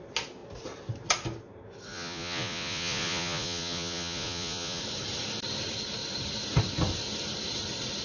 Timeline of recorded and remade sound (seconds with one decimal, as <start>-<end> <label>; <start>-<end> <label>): 0.0-1.9 recorded; 1.9-4.8 remade; 4.8-8.0 recorded